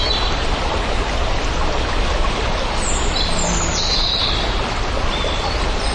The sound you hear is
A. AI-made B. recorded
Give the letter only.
B